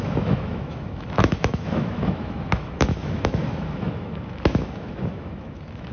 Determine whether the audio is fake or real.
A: fake